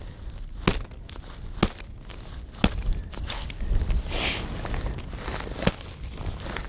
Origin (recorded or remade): recorded